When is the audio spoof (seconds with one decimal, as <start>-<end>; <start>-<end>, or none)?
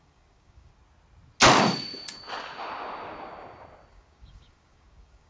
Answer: 0.0-0.7; 3.9-5.3